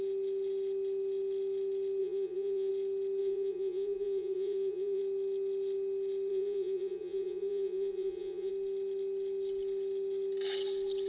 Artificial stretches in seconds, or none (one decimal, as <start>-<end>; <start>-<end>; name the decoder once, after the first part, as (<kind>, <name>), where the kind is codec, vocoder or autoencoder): 2.0-2.7 (vocoder, Vocos); 3.2-5.0; 6.3-8.5